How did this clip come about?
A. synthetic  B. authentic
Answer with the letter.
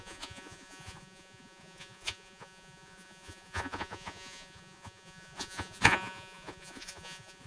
A